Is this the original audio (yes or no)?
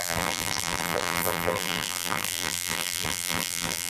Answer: no